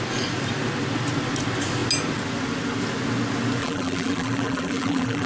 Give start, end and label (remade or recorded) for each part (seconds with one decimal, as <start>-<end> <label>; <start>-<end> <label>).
0.0-3.6 recorded; 3.6-5.3 remade